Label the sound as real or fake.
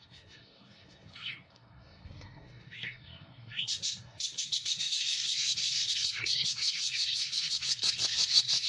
fake